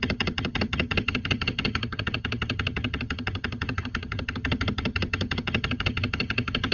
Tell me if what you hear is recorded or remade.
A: remade